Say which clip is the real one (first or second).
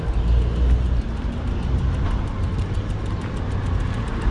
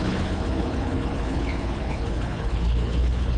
first